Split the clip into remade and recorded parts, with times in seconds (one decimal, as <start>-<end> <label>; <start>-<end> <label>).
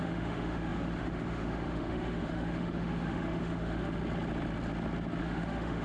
0.0-4.0 remade; 4.0-5.2 recorded; 5.2-5.8 remade